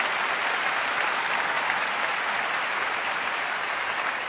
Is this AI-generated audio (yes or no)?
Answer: no